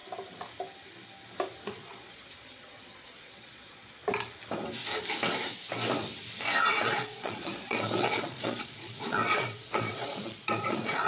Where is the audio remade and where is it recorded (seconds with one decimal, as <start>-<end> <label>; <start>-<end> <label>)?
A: 0.0-1.7 recorded; 1.7-4.0 remade; 4.0-6.7 recorded; 6.7-11.1 remade